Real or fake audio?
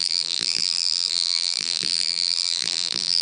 fake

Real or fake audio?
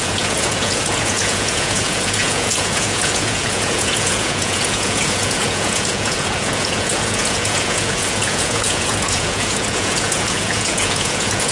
fake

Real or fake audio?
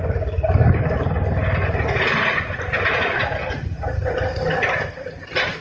real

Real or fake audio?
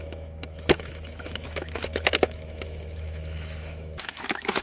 fake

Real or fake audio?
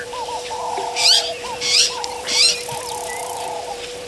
fake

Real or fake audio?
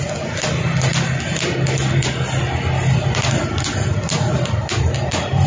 real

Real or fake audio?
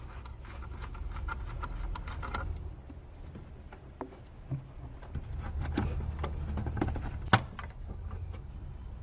real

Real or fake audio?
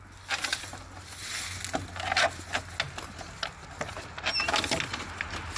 real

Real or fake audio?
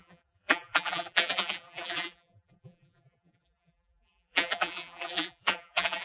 fake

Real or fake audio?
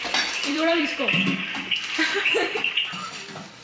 fake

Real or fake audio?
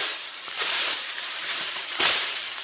fake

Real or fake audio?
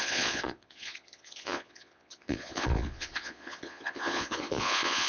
fake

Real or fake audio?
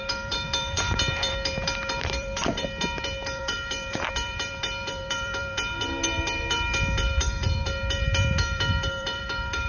fake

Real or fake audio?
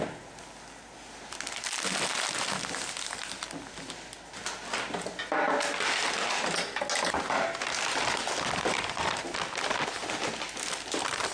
real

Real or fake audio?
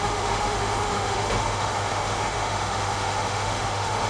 fake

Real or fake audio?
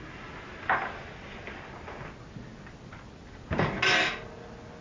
real